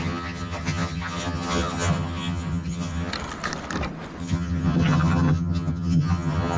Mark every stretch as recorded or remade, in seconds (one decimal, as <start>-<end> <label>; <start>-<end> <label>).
0.0-3.1 remade; 3.1-4.2 recorded; 4.2-6.6 remade